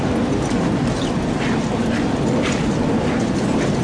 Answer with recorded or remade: recorded